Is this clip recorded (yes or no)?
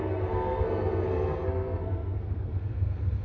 no